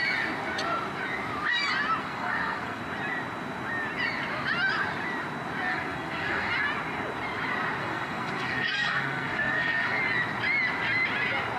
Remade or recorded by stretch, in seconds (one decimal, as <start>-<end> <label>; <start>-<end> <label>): 0.0-2.0 recorded; 2.0-2.8 remade; 2.8-5.7 recorded; 5.7-6.5 remade; 6.5-7.8 recorded; 7.8-10.0 remade; 10.0-11.6 recorded